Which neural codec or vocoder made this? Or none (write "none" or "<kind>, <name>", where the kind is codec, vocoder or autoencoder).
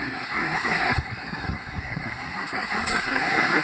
codec, SNAC